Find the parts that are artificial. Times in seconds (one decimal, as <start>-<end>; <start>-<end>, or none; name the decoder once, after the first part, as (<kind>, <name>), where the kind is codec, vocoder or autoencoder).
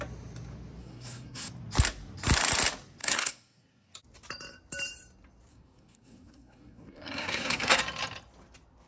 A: 0.8-1.5 (codec, SNAC); 3.0-3.9; 5.5-7.8